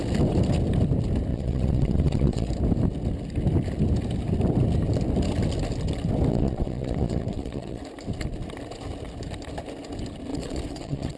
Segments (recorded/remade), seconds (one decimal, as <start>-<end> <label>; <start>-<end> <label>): 0.0-1.3 recorded; 1.3-2.5 remade; 2.5-6.3 recorded; 6.3-7.8 remade; 7.8-10.3 recorded; 10.3-11.2 remade